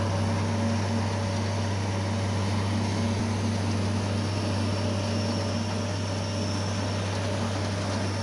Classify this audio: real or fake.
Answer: real